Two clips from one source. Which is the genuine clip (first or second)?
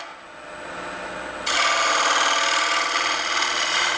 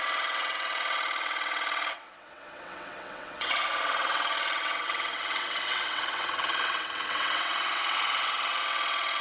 first